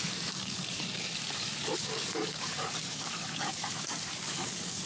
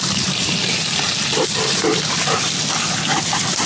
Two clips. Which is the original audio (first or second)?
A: second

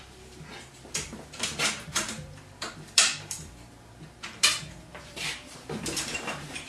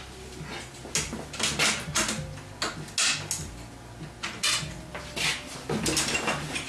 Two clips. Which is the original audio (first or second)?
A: second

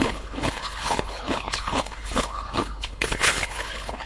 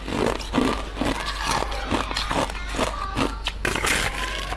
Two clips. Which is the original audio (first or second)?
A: second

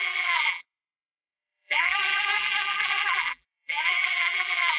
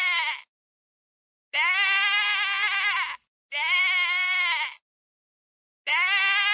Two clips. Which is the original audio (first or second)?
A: second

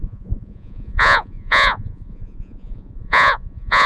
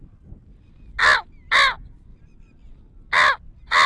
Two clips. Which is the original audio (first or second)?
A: second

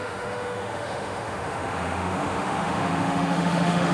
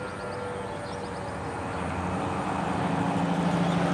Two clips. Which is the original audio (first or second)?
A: second